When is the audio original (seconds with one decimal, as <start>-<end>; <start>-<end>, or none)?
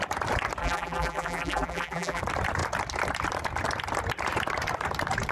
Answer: 0.0-0.6; 2.2-5.3